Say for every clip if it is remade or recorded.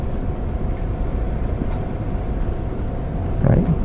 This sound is recorded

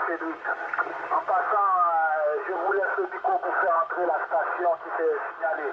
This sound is recorded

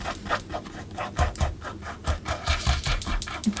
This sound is recorded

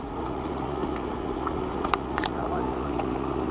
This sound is remade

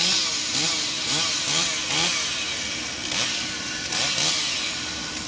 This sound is recorded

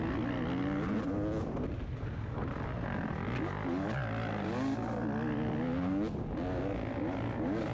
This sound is recorded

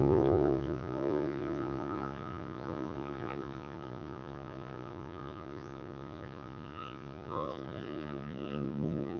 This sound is remade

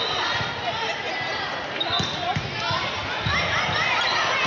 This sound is recorded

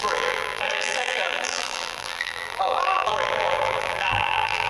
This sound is remade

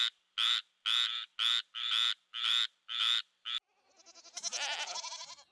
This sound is recorded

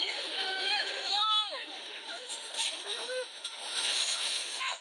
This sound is remade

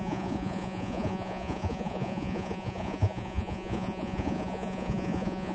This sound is remade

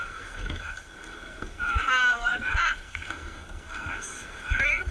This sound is remade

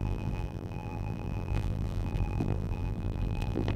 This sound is remade